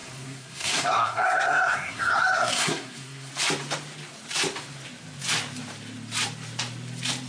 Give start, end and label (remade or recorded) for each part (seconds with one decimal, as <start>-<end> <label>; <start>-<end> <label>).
0.0-3.3 remade; 3.3-7.3 recorded